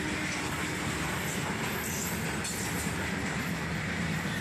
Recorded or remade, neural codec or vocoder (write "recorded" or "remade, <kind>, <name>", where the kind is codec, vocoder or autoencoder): recorded